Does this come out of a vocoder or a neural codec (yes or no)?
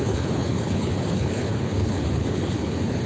yes